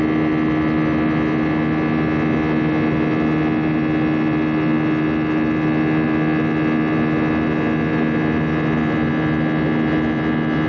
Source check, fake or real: real